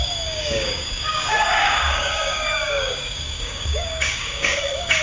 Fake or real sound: fake